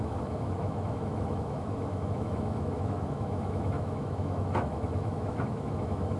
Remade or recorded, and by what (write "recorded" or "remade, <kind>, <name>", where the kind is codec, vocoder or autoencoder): remade, autoencoder, DAC-VAE